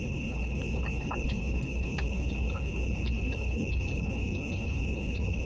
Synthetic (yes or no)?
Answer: yes